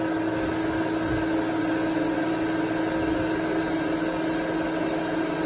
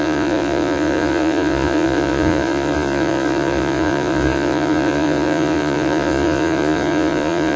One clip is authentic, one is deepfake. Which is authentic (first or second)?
first